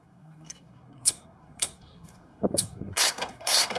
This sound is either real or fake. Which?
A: fake